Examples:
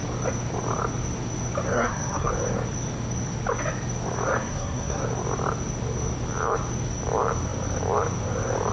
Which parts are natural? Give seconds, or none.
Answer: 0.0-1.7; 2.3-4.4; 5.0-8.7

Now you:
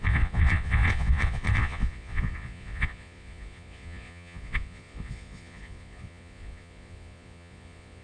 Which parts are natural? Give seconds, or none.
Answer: none

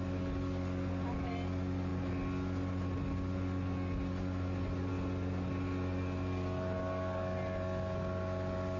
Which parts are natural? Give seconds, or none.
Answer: 0.0-8.8

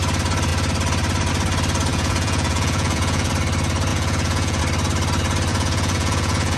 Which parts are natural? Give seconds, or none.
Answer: 0.0-1.9; 3.3-3.9; 4.6-5.5

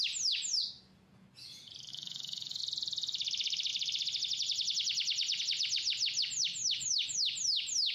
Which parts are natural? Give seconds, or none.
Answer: 0.0-1.9; 2.6-6.6; 7.2-7.9

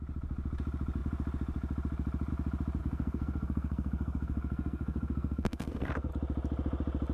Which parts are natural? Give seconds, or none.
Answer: 0.0-2.8; 6.1-7.1

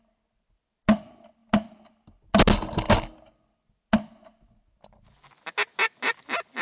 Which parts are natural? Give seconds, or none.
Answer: 0.0-6.6

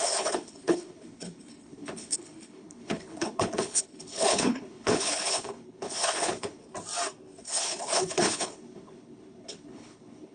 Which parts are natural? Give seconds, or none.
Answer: 6.6-7.4